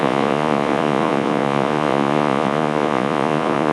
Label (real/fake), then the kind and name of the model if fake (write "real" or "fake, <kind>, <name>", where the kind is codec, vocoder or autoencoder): fake, vocoder, Vocos